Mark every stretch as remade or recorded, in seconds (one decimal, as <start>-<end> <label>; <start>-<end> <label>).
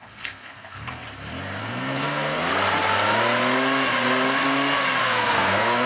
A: 0.0-1.0 remade; 1.0-1.6 recorded; 1.6-2.4 remade; 2.4-5.0 recorded; 5.0-5.9 remade